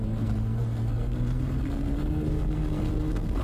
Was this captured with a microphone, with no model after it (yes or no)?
no